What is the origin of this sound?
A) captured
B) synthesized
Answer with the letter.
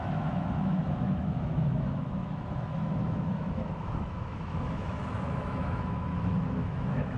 B